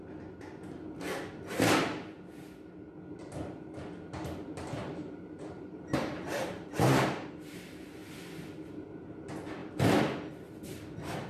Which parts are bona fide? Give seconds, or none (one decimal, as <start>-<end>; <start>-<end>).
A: 0.0-4.8; 7.3-11.3